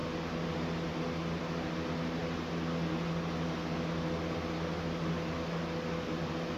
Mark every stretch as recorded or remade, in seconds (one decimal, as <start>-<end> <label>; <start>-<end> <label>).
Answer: 0.0-6.6 recorded